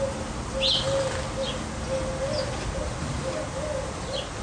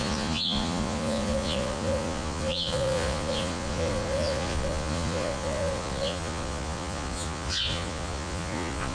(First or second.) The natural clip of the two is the first